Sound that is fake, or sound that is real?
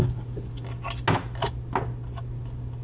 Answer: real